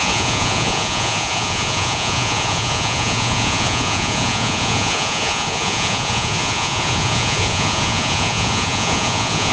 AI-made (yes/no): yes